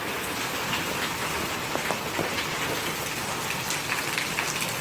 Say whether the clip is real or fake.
real